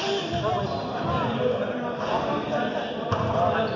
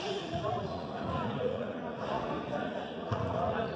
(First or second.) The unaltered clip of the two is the first